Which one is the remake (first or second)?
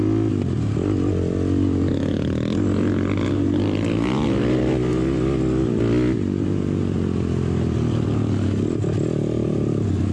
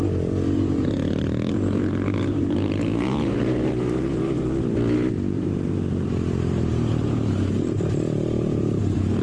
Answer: second